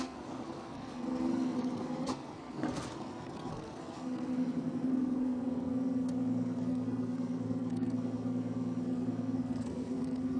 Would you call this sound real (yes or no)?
no